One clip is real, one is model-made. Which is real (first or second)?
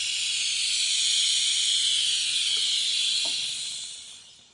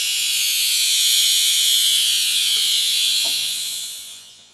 first